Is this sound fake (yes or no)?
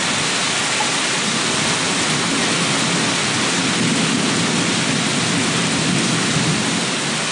no